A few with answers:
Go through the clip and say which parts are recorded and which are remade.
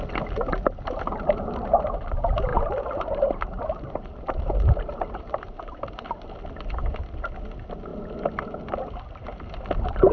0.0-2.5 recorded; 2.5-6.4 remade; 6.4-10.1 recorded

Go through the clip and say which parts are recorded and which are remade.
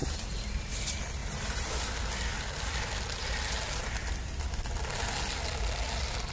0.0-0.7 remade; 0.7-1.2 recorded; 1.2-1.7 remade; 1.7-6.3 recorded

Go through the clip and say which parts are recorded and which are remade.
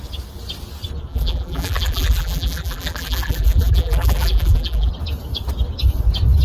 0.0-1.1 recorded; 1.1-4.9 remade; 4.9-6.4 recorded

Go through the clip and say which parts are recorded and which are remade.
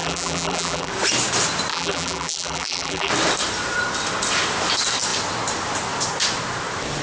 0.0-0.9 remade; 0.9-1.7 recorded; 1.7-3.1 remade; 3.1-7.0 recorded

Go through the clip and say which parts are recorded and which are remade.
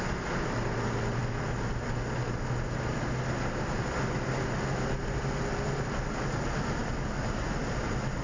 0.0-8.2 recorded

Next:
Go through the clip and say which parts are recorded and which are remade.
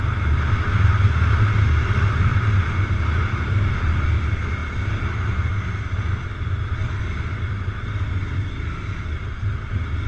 0.0-10.1 recorded